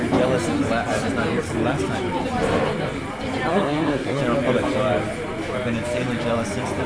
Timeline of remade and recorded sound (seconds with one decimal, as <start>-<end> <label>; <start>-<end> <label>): 0.0-3.5 recorded; 3.5-4.2 remade; 4.2-6.9 recorded